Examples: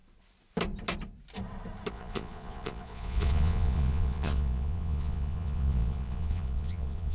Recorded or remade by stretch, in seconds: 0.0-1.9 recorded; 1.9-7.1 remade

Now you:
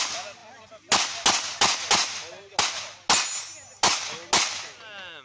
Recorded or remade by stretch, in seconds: 0.0-5.2 recorded

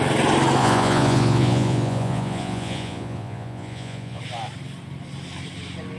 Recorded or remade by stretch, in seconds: 0.0-0.6 recorded; 0.6-4.2 remade; 4.2-6.0 recorded